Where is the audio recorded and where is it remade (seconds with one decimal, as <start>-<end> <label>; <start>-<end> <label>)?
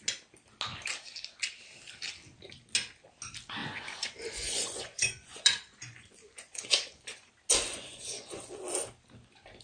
0.0-3.6 recorded; 3.6-7.3 remade; 7.3-7.7 recorded; 7.7-8.4 remade; 8.4-9.6 recorded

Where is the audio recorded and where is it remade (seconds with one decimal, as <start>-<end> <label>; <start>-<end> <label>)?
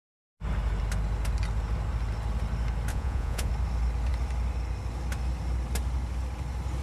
0.0-2.9 recorded; 2.9-3.5 remade; 3.5-6.8 recorded